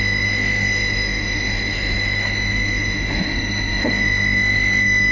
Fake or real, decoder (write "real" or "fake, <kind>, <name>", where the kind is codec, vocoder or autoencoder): fake, autoencoder, DAC-VAE